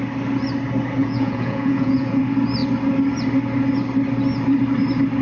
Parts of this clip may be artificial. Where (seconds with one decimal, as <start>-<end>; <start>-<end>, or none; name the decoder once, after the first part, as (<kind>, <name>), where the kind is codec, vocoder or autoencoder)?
1.0-2.2 (vocoder, Vocos)

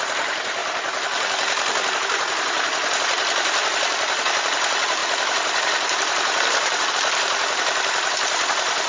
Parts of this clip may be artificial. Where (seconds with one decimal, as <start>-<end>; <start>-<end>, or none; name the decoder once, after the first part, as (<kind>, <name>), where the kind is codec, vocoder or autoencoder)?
0.0-8.9 (vocoder, BigVGAN v2)

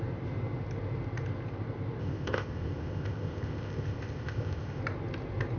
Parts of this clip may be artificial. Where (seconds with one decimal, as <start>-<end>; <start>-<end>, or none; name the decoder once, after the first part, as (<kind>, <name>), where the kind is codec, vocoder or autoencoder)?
2.0-4.8 (codec, ZipCodec)